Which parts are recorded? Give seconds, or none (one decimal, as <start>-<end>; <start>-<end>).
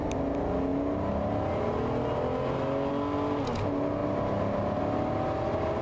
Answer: 0.0-5.8